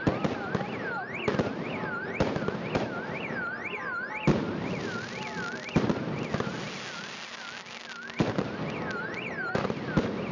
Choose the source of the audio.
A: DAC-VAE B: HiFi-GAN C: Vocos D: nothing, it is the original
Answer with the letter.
D